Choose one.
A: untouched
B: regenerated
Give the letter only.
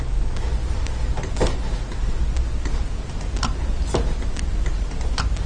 A